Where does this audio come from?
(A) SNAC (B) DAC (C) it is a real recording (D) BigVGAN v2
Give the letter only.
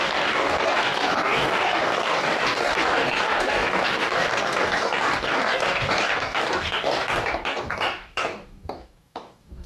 B